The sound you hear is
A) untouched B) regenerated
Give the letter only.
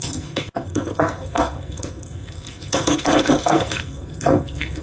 B